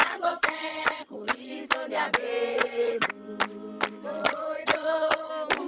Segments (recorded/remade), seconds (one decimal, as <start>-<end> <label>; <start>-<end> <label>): 0.0-1.5 remade; 1.5-2.5 recorded; 2.5-3.1 remade; 3.1-4.1 recorded; 4.1-5.3 remade; 5.3-5.7 recorded